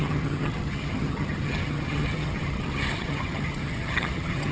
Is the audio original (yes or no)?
no